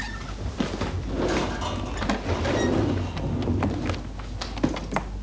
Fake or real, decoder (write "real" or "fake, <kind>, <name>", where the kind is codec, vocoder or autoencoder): real